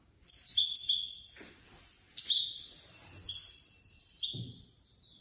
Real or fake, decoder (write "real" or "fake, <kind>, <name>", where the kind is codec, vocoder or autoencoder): real